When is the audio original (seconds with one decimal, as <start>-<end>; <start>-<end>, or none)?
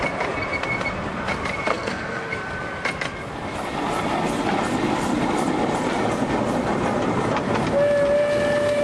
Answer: 0.0-1.7; 2.3-8.8